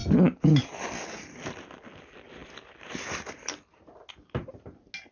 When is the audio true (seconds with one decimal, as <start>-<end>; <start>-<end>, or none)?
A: 0.0-5.1